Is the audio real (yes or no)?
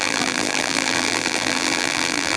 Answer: no